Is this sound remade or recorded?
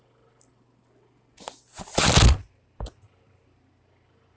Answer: recorded